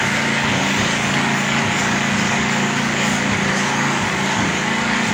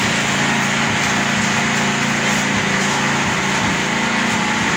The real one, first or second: second